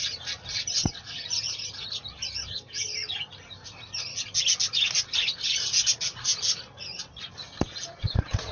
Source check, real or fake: real